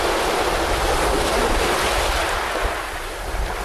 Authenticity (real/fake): real